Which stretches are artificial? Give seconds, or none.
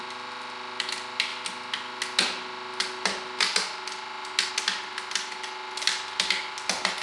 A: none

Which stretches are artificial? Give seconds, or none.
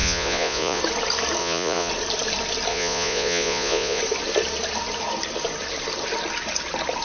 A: 0.0-0.8; 1.4-1.9; 2.7-4.0